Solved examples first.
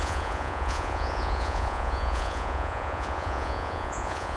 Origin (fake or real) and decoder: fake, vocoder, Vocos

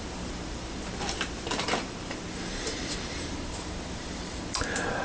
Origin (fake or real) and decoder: fake, vocoder, BigVGAN v2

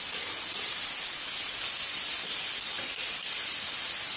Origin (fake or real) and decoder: real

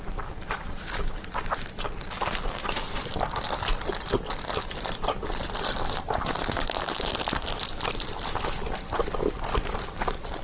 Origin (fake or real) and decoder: real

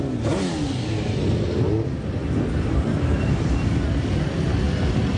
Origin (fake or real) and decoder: real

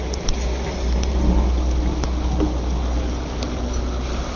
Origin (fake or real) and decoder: real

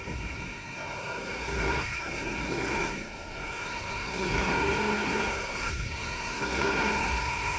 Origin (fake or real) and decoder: fake, codec, SNAC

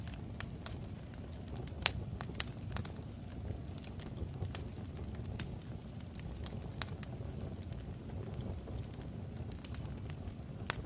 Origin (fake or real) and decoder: real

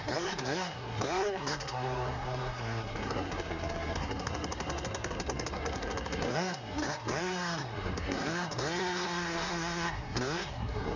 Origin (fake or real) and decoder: fake, codec, SNAC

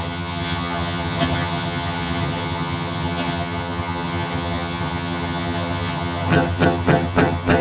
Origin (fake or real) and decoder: fake, vocoder, HiFi-GAN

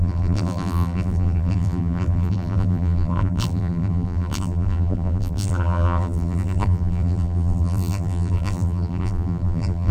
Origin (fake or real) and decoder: fake, vocoder, BigVGAN v2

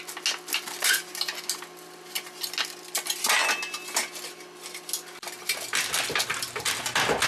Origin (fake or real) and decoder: real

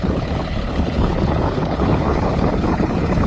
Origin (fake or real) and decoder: fake, codec, HILCodec